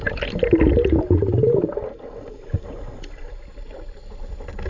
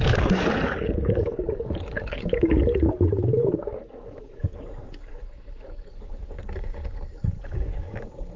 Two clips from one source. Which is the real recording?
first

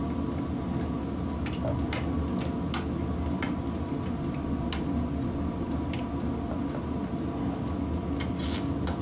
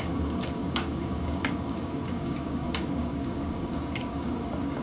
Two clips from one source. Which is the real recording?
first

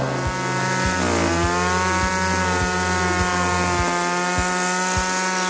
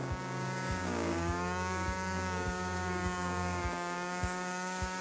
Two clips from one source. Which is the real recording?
first